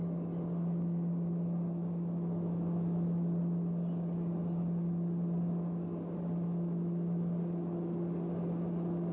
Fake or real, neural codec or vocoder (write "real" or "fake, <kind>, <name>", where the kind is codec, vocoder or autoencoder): real